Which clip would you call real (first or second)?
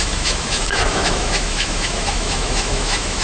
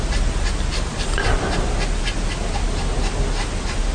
second